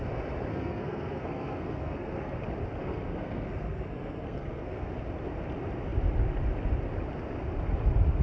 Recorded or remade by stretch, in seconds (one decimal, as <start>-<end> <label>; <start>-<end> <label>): 0.0-0.5 recorded; 0.5-2.4 remade; 2.4-2.8 recorded; 2.8-4.9 remade; 4.9-8.2 recorded